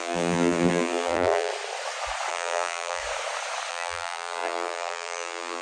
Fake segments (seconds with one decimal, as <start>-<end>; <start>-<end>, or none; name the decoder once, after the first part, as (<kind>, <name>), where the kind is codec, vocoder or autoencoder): 0.0-1.5 (vocoder, BigVGAN v2); 2.3-3.0; 3.7-5.6